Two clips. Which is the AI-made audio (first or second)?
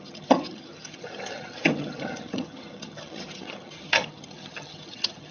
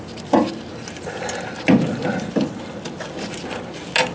first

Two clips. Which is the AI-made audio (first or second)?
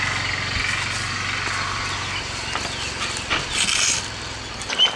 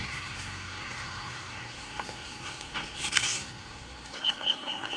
second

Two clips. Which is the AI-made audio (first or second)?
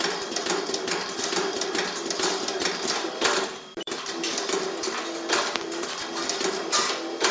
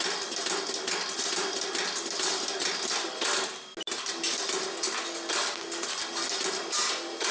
first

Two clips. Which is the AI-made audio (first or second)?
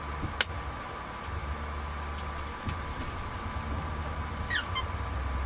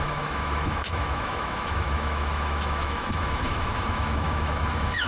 second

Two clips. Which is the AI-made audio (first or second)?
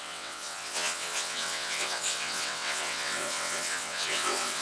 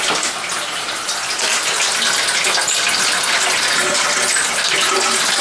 first